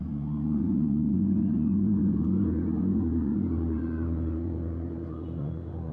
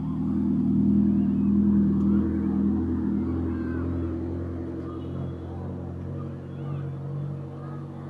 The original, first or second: second